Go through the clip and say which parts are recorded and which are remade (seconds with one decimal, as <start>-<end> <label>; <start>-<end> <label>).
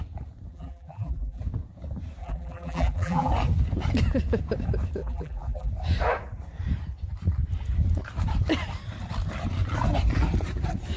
0.0-0.5 recorded; 0.5-1.4 remade; 1.4-2.2 recorded; 2.2-3.3 remade; 3.3-5.0 recorded; 5.0-5.7 remade; 5.7-11.0 recorded